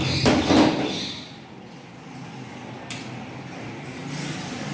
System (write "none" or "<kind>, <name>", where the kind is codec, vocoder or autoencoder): none